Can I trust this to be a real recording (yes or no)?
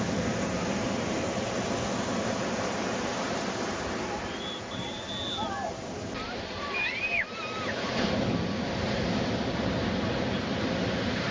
yes